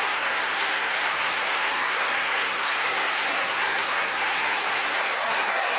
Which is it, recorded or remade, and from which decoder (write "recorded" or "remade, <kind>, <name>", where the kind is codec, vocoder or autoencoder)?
remade, codec, SNAC